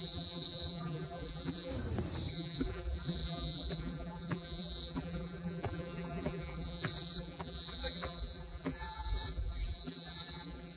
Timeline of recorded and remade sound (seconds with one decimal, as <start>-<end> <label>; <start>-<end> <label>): 0.0-1.7 remade; 1.7-2.3 recorded; 2.3-10.8 remade